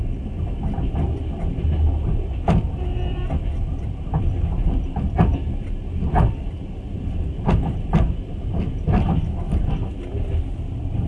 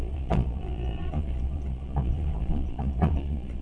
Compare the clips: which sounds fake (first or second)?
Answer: second